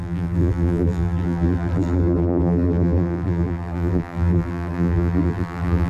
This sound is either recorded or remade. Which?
remade